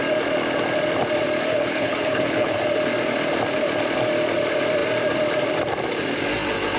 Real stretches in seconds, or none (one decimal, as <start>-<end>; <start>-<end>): 0.0-1.5; 2.6-6.8

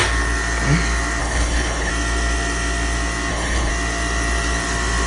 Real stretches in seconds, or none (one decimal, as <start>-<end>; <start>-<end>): 0.0-1.2; 1.9-3.3; 3.7-5.1

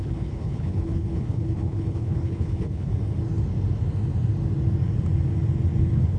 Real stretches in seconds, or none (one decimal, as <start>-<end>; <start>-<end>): 2.9-5.8

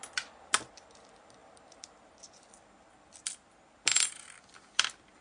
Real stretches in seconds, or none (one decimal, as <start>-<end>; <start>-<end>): 0.0-5.2

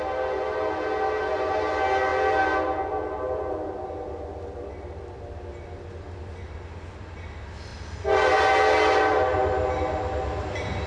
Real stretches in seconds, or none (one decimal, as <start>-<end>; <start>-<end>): 0.0-10.9

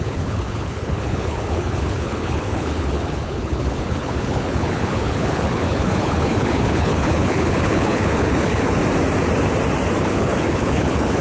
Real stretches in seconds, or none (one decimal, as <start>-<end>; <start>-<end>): 8.8-10.0